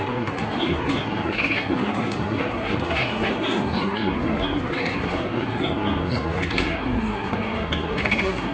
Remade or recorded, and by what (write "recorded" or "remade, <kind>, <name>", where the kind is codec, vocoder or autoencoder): remade, codec, SNAC